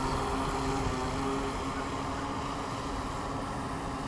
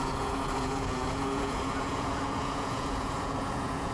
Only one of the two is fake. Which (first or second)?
second